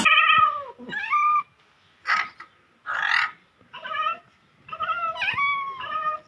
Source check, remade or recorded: recorded